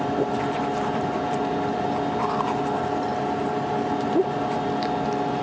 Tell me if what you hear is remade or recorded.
recorded